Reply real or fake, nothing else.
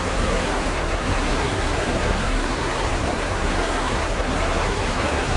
fake